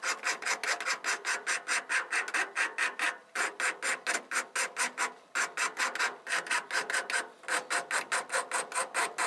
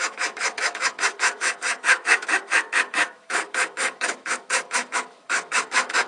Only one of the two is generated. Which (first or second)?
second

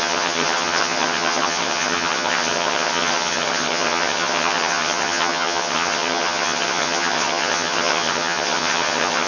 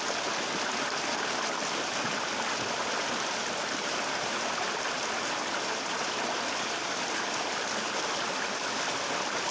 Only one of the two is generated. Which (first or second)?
first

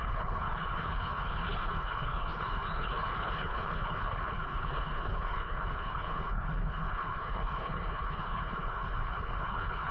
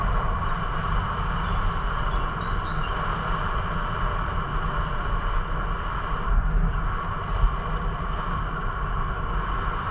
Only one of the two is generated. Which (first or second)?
first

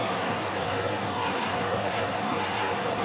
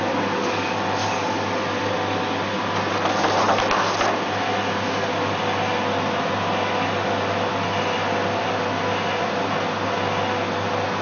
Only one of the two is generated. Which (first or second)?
first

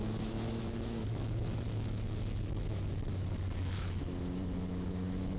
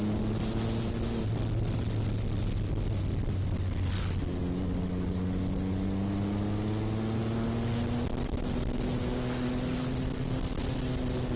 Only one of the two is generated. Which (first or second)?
first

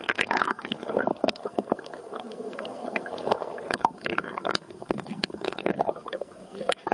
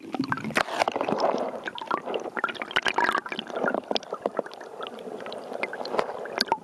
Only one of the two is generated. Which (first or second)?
first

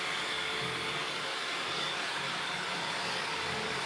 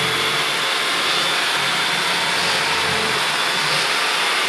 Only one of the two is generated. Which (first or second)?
first